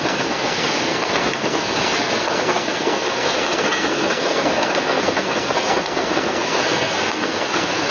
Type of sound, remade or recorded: remade